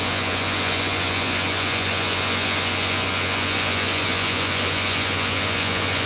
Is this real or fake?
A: fake